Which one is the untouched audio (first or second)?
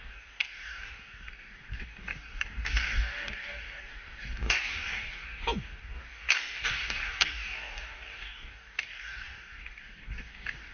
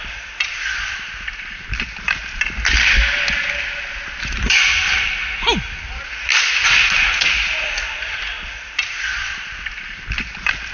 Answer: second